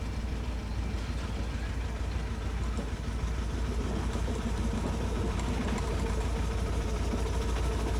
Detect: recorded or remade recorded